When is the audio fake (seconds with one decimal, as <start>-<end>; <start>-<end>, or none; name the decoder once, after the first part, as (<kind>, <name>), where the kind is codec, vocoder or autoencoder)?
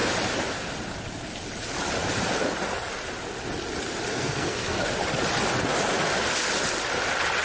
4.1-4.9 (codec, SNAC)